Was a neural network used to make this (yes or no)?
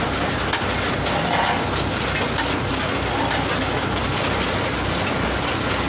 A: no